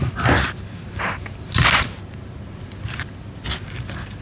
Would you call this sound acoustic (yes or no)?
yes